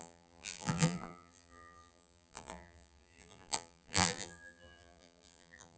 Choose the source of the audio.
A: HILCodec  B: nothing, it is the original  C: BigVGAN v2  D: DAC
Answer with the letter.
C